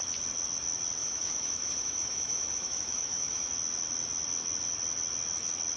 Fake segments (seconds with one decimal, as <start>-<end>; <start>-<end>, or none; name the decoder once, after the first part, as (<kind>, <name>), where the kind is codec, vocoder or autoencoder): 1.0-3.5 (autoencoder, DAC-VAE)